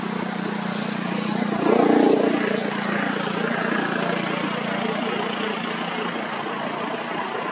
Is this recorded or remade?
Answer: recorded